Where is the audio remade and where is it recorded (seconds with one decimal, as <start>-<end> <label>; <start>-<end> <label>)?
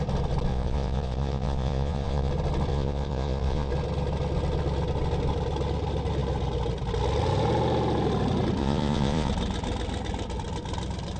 0.0-0.5 recorded; 0.5-2.3 remade; 2.3-2.7 recorded; 2.7-3.7 remade; 3.7-8.6 recorded; 8.6-9.3 remade; 9.3-11.2 recorded